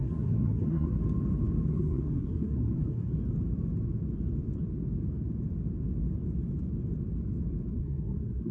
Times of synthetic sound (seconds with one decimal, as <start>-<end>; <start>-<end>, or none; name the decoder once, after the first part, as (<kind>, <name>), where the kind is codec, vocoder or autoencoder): 0.0-1.0 (codec, SNAC); 1.7-3.1; 7.7-8.5